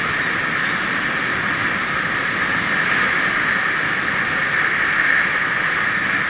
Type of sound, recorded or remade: recorded